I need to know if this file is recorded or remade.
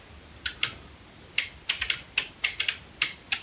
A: recorded